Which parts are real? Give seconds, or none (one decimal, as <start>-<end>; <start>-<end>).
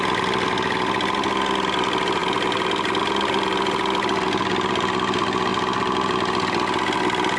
0.0-7.4